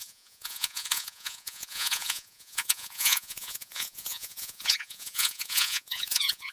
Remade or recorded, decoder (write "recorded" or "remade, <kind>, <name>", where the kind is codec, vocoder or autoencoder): remade, vocoder, Vocos